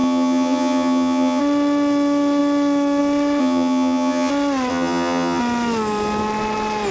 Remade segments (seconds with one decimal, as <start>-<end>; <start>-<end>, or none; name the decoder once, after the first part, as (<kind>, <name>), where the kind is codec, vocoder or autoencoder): 0.0-1.4 (vocoder, HiFi-GAN); 3.4-4.3; 4.7-5.4